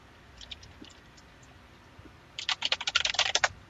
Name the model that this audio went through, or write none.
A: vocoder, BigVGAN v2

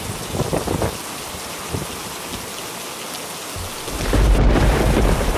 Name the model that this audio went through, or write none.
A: none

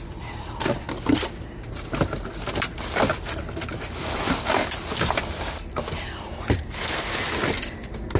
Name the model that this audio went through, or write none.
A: vocoder, BigVGAN v2